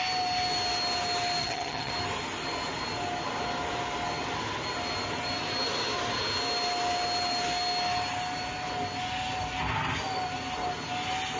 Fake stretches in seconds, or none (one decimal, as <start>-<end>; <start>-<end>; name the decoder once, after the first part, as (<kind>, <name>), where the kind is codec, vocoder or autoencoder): 1.4-1.9 (vocoder, HiFi-GAN)